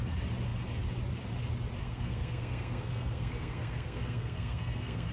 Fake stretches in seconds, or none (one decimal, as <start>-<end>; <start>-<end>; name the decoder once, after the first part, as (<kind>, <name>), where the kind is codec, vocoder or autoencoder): 1.8-5.1 (codec, SNAC)